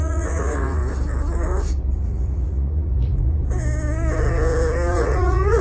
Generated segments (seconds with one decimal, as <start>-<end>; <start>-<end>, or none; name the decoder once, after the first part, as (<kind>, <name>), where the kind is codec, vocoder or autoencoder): 0.0-0.8 (vocoder, Vocos); 2.0-3.4; 4.9-5.6

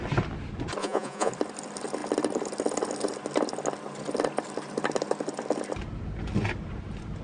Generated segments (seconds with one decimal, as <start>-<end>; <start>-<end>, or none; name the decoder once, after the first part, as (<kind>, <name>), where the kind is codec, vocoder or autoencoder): 0.8-1.3 (vocoder, Vocos)

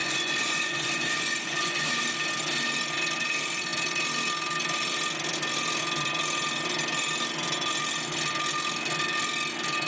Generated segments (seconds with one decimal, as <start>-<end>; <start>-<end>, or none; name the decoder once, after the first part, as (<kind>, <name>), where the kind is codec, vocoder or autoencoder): 0.0-2.0 (vocoder, Vocos)

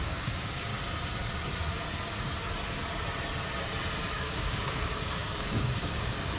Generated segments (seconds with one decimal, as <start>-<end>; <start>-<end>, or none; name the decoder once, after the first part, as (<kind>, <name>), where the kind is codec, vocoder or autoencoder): 0.0-0.7 (codec, DAC); 4.1-6.4

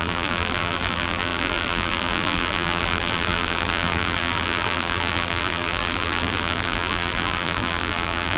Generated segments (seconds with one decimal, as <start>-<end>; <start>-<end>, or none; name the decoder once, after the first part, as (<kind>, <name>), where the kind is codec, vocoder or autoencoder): 0.0-8.4 (vocoder, BigVGAN v2)

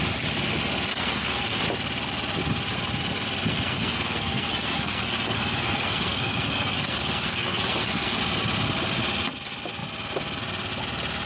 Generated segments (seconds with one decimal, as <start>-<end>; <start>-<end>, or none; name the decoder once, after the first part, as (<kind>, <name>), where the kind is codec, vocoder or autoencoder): 0.9-1.6 (codec, SNAC); 3.5-8.2